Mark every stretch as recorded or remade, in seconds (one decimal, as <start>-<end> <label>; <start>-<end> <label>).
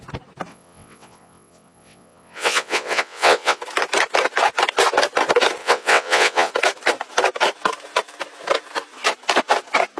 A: 0.0-0.5 recorded; 0.5-3.6 remade; 3.6-5.6 recorded; 5.6-6.5 remade; 6.5-10.0 recorded